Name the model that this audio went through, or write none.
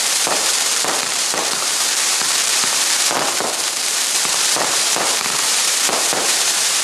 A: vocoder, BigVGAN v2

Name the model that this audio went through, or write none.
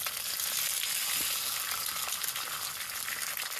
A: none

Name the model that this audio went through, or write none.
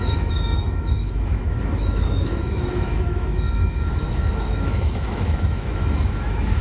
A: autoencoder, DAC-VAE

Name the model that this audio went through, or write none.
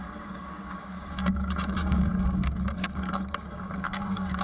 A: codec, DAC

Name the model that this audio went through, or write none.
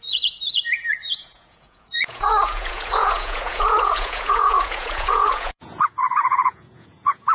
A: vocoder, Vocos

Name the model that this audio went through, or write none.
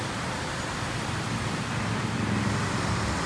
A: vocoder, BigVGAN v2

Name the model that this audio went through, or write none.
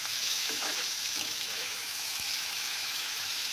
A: autoencoder, DAC-VAE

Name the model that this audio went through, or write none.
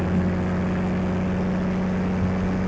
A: none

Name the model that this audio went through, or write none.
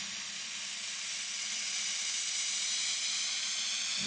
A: none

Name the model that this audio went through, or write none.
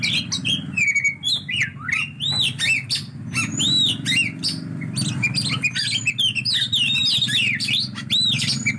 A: none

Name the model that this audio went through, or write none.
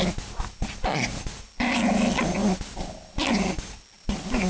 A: none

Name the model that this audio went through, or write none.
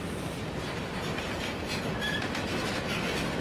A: none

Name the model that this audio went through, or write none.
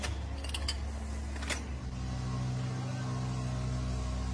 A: none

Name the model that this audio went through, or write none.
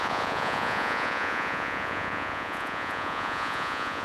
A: vocoder, Vocos